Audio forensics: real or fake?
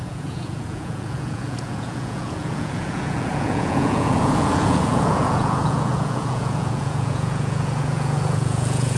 fake